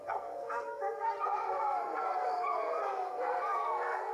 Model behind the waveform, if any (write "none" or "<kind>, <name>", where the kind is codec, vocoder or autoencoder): codec, SNAC